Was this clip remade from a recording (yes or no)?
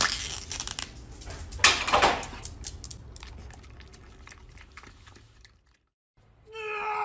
no